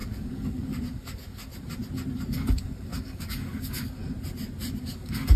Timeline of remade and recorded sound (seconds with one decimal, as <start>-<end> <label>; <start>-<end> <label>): 0.0-1.5 remade; 1.5-2.1 recorded; 2.1-4.0 remade; 4.0-4.8 recorded; 4.8-5.4 remade